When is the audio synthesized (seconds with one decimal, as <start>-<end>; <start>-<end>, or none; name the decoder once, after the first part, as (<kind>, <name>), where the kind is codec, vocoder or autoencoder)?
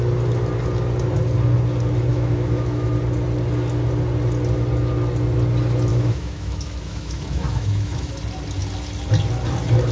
2.1-2.9 (autoencoder, DAC-VAE); 5.9-8.1